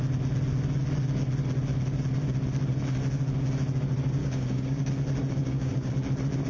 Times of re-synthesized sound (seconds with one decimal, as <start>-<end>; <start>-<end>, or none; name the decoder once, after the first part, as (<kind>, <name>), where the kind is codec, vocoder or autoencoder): 4.2-4.9 (codec, DAC); 5.4-5.9